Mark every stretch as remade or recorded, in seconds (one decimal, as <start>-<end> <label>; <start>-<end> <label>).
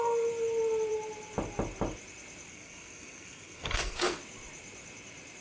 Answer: 0.0-2.5 recorded; 2.5-4.2 remade; 4.2-5.4 recorded